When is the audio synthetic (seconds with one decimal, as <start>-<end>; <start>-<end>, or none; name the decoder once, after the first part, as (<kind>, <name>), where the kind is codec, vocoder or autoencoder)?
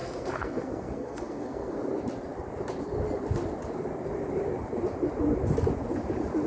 0.0-1.8 (codec, SNAC)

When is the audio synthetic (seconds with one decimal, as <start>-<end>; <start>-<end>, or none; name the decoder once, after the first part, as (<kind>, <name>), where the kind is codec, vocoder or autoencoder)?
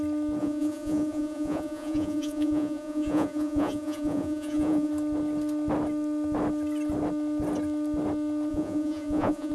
0.4-4.9 (vocoder, Vocos); 8.5-9.5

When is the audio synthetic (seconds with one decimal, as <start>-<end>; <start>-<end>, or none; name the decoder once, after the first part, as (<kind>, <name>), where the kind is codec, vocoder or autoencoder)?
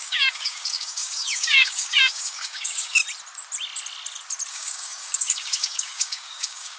0.0-3.0 (codec, DAC); 4.5-6.8